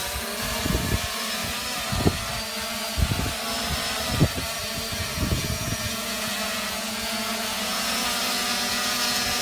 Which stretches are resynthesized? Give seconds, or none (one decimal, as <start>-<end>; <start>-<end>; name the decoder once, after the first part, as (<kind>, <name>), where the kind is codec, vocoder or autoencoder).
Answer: 5.1-9.4 (vocoder, Vocos)